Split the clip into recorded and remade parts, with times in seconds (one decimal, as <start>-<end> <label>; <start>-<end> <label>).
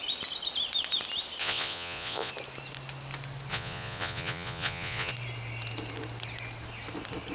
0.0-1.4 recorded; 1.4-2.3 remade; 2.3-3.5 recorded; 3.5-5.1 remade; 5.1-7.3 recorded